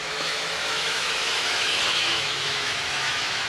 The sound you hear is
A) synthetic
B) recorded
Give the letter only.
A